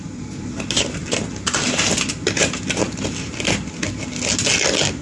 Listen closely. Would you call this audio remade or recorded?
recorded